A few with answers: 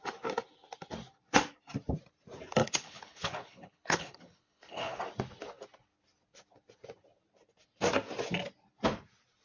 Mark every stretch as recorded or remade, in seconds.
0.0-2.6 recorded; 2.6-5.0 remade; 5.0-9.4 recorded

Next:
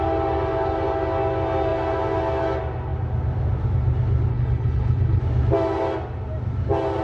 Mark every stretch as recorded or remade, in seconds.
0.0-4.3 recorded; 4.3-5.2 remade; 5.2-7.0 recorded